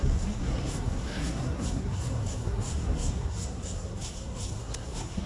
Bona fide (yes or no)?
no